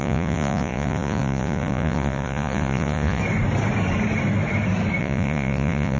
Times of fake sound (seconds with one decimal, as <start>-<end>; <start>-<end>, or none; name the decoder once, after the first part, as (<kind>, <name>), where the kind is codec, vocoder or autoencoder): 0.0-3.2 (vocoder, Vocos); 5.0-6.0